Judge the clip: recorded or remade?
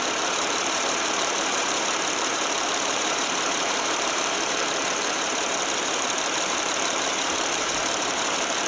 remade